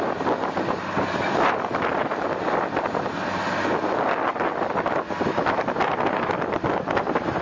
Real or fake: real